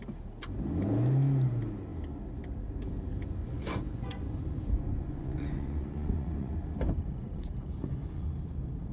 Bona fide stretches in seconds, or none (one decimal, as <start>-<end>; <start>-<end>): 0.0-3.4; 8.3-8.9